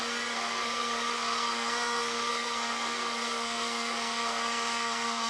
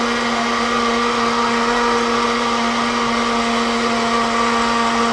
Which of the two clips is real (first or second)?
second